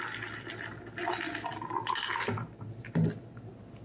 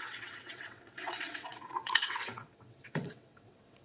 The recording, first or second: first